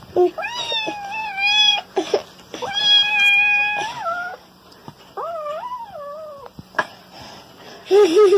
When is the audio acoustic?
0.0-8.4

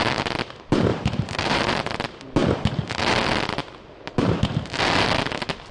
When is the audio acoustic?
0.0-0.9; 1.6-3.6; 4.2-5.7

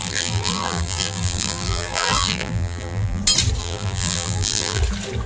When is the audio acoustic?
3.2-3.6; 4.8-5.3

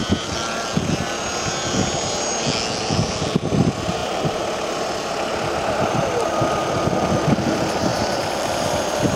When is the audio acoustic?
0.0-4.0; 6.7-7.9